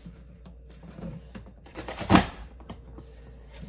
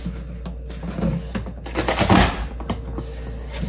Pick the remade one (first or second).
first